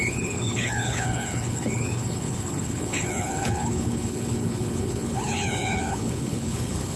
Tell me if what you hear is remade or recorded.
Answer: remade